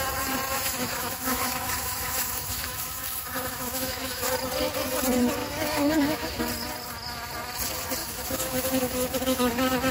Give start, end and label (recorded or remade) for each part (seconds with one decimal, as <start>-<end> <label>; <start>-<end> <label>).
0.0-0.5 recorded; 0.5-4.3 remade; 4.3-5.4 recorded; 5.4-6.4 remade; 6.4-8.0 recorded; 8.0-9.9 remade